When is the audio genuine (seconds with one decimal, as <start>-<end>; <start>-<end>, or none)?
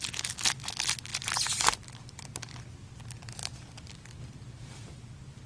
0.0-1.1; 2.7-3.4